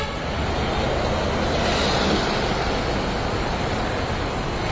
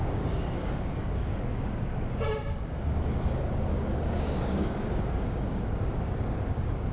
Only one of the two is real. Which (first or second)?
first